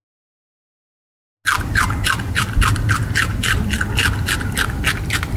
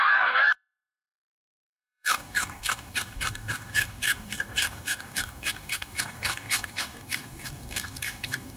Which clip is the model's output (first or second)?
second